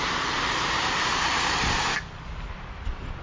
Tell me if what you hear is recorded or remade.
recorded